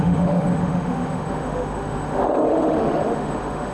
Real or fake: fake